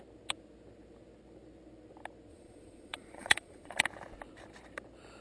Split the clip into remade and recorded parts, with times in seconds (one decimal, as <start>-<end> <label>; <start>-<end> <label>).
0.0-2.3 recorded; 2.3-3.8 remade; 3.8-5.2 recorded